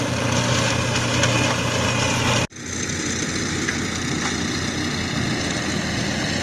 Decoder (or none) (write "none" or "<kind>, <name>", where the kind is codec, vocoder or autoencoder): none